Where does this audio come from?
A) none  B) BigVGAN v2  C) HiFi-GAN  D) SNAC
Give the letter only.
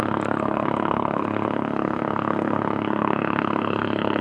D